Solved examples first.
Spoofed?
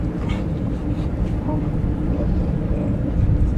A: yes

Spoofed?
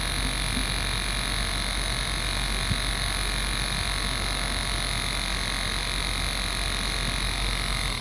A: no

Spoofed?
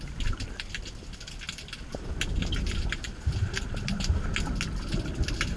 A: no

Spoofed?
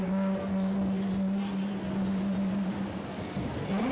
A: no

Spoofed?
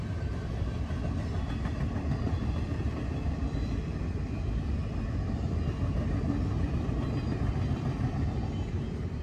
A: no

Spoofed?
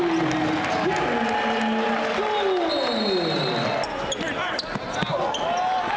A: no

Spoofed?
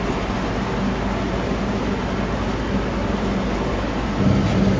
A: no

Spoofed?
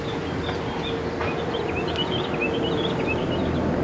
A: no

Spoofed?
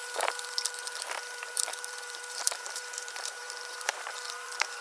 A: yes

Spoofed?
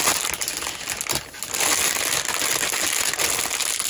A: no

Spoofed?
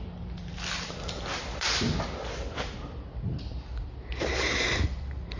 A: no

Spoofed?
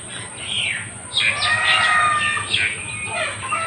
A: no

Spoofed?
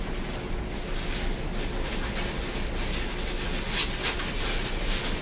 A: no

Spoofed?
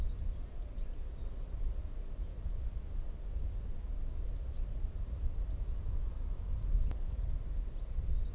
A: no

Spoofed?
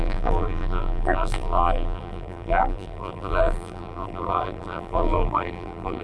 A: yes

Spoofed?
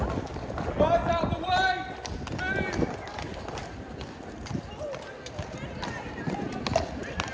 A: no